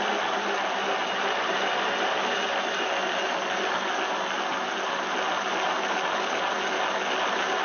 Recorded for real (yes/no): yes